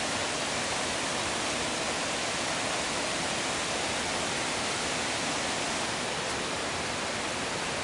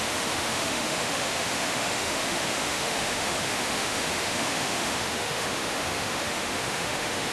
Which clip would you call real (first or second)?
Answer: first